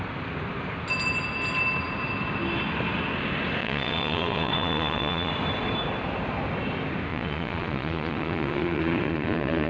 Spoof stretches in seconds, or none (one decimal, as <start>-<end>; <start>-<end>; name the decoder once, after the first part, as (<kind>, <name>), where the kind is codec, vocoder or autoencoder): 3.6-5.3 (vocoder, Vocos); 7.1-9.7